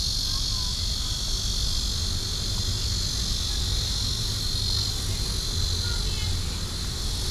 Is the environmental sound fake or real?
real